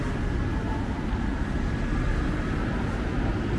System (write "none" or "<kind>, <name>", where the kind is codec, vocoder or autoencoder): none